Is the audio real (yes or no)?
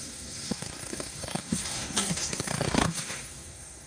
no